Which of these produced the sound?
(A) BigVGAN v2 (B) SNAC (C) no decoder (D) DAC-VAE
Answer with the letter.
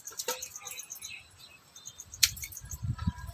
A